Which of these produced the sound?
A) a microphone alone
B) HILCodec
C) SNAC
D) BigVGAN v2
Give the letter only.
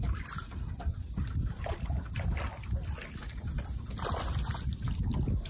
D